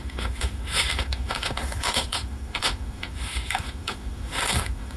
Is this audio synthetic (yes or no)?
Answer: yes